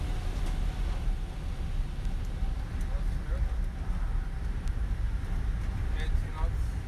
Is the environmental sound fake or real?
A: real